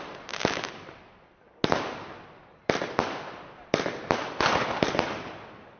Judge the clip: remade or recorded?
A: recorded